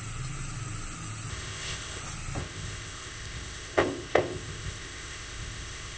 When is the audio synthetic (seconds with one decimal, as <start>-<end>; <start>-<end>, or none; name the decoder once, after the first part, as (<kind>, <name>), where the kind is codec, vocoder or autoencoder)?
1.3-2.0 (codec, ZipCodec); 2.4-6.0